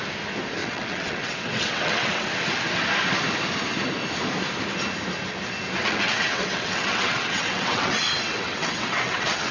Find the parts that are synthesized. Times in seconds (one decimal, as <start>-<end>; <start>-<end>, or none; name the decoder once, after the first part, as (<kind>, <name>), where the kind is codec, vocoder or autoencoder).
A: 0.6-2.3 (vocoder, WaveNeXt); 5.8-9.5